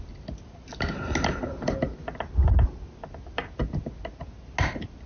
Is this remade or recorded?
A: recorded